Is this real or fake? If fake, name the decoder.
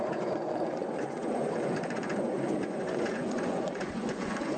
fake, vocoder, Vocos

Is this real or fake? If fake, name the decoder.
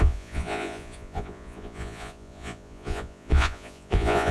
fake, vocoder, Vocos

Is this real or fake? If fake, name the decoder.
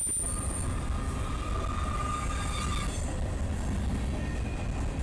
real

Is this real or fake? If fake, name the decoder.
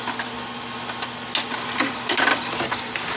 real